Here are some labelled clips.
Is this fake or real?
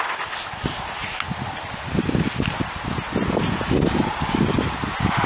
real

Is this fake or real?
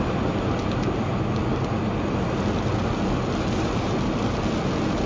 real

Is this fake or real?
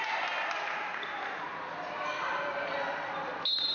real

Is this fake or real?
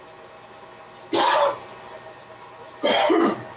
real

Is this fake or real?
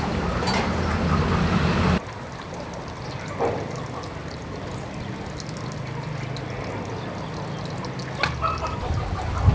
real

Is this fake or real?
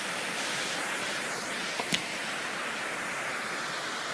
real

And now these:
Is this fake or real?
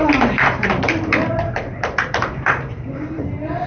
fake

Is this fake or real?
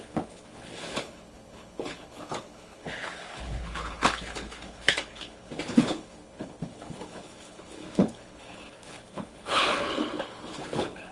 fake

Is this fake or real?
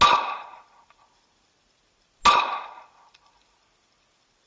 real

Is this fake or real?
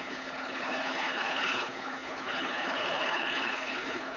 fake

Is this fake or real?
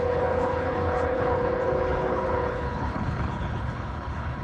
fake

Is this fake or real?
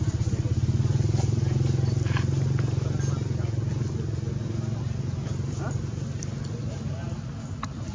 real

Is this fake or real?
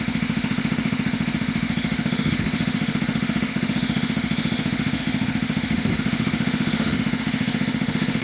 fake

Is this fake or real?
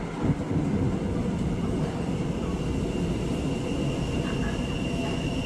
real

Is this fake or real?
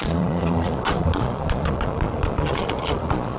fake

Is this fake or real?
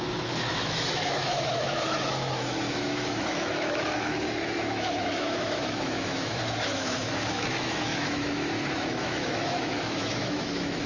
fake